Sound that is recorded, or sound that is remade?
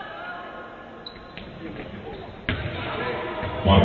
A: recorded